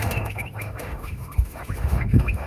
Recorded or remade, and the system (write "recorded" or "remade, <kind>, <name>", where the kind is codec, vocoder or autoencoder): remade, autoencoder, DAC-VAE